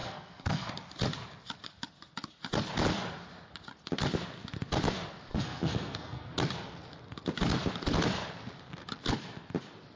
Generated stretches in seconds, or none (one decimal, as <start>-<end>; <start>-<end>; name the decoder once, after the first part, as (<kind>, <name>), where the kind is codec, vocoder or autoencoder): 0.0-0.7 (codec, SNAC); 5.3-6.3